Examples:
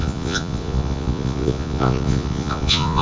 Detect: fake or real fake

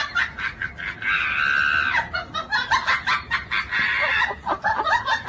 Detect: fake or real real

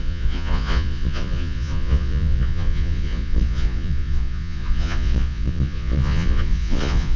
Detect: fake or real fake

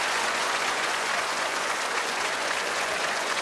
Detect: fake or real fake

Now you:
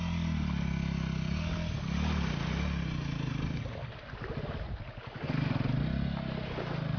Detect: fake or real real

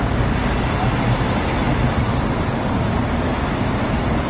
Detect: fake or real real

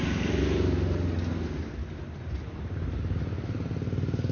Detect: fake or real real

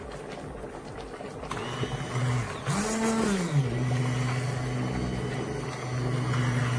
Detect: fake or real real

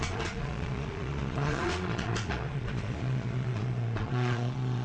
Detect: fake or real fake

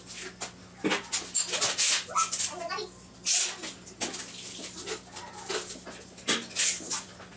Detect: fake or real real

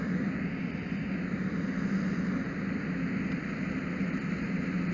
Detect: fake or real real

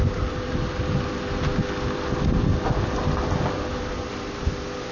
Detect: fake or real real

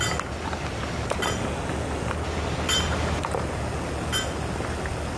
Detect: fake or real real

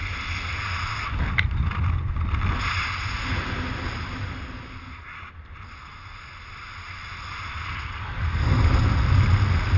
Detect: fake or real real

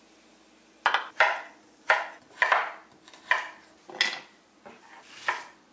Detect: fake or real real